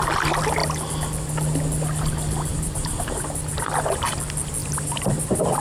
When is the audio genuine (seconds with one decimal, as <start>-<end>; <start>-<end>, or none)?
0.0-2.5; 3.7-4.6